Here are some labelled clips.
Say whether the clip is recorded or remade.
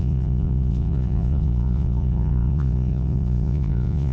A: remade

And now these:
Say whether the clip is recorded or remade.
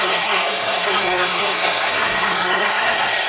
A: remade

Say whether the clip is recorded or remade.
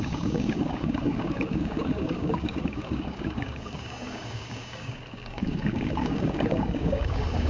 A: remade